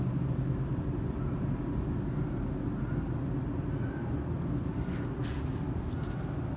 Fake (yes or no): no